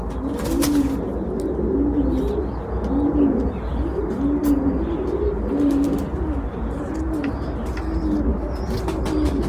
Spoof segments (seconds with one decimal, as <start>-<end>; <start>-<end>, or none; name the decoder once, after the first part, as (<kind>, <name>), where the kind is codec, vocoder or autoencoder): none